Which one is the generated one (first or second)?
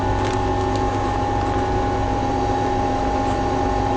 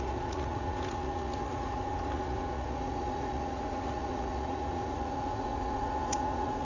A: second